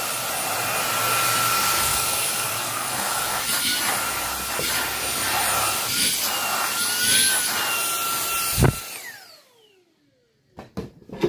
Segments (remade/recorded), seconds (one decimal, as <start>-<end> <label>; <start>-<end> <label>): 0.0-1.9 recorded; 1.9-3.4 remade; 3.4-11.3 recorded